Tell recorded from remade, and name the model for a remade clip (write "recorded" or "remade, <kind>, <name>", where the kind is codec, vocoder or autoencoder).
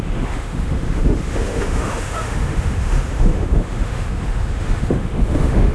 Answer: remade, autoencoder, DAC-VAE